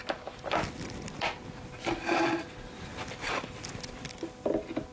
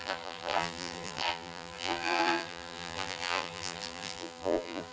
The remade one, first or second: second